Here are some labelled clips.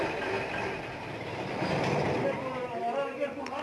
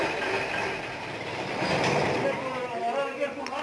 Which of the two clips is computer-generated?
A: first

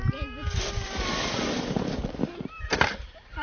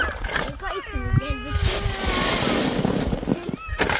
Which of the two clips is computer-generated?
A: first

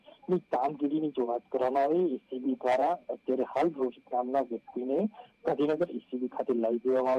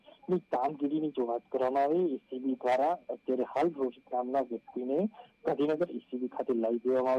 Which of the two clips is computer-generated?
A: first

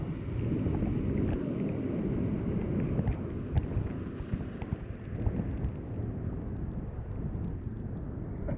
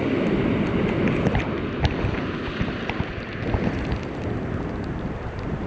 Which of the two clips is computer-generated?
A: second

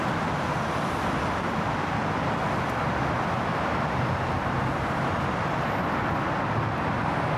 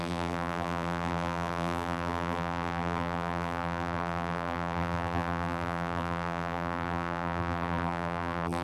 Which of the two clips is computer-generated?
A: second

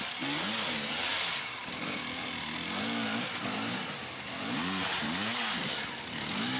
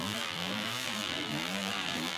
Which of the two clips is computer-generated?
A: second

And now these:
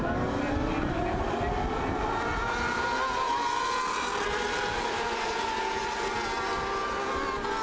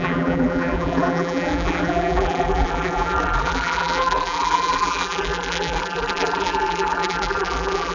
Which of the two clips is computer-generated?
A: second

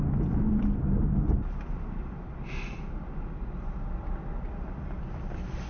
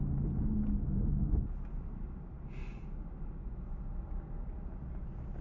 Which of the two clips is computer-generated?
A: first